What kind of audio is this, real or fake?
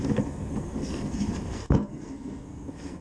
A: fake